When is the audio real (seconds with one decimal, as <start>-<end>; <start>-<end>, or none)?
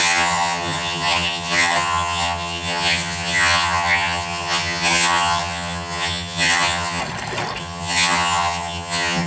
7.0-7.6